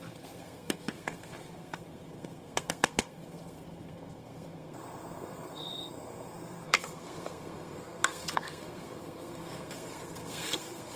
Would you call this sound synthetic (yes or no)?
yes